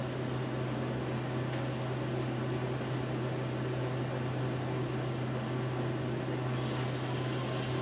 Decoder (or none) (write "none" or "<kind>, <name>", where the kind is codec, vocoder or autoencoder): none